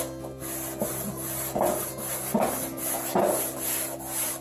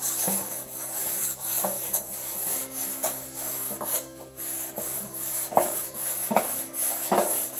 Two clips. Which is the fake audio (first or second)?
second